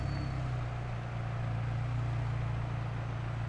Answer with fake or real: real